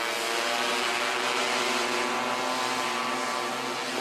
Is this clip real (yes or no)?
yes